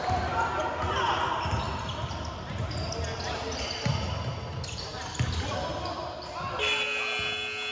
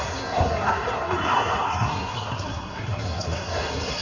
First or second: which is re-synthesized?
second